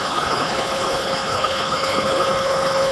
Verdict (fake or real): fake